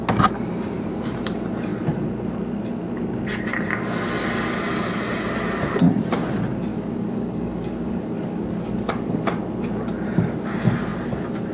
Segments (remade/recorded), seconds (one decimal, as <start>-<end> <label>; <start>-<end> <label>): 0.0-6.7 recorded; 6.7-9.3 remade; 9.3-11.5 recorded